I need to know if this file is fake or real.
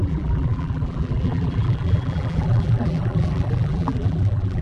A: fake